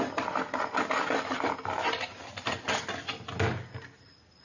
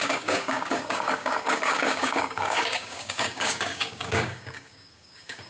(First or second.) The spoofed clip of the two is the second